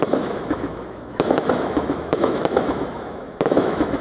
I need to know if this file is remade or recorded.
remade